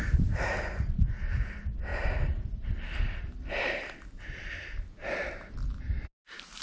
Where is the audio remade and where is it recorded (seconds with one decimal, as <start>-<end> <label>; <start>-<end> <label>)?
0.0-6.6 recorded